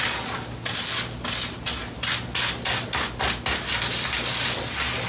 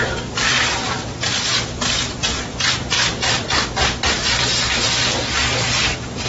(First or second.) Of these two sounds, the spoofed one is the second